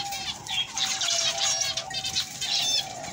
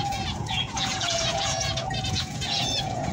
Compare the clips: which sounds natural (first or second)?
first